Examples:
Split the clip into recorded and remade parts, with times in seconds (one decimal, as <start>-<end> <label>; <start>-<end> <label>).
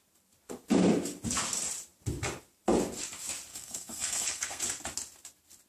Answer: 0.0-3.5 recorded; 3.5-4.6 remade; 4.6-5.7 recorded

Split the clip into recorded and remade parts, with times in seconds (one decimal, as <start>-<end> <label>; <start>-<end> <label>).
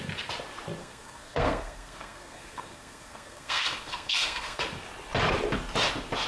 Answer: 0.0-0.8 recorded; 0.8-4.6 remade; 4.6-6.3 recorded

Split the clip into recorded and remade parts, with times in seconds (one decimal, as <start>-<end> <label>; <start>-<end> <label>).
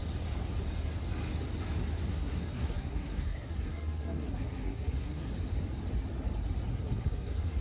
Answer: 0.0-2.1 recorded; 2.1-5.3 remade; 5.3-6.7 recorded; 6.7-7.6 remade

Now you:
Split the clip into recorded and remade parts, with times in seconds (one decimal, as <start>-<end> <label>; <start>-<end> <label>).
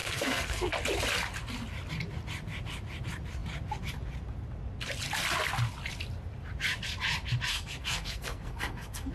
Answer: 0.0-0.7 remade; 0.7-7.5 recorded; 7.5-9.1 remade